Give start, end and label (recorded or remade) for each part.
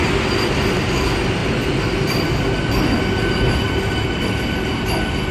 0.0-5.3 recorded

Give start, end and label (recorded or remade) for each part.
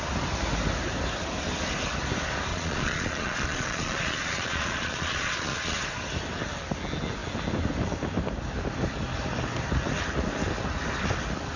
0.0-2.5 recorded; 2.5-5.8 remade; 5.8-11.6 recorded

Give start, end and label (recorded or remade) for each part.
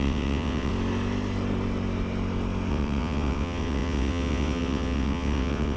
0.0-0.7 remade; 0.7-2.7 recorded; 2.7-5.8 remade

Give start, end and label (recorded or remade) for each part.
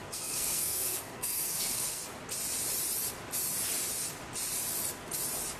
0.0-2.0 remade; 2.0-5.6 recorded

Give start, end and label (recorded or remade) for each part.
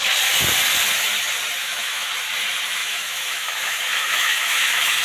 0.0-1.6 recorded; 1.6-2.1 remade; 2.1-2.8 recorded; 2.8-5.0 remade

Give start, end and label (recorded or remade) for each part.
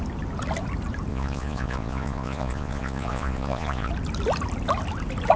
0.0-1.1 recorded; 1.1-3.9 remade; 3.9-5.4 recorded